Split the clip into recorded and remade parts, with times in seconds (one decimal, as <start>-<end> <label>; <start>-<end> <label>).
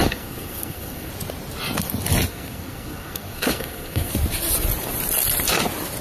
0.0-1.1 remade; 1.1-2.3 recorded; 2.3-4.1 remade; 4.1-6.0 recorded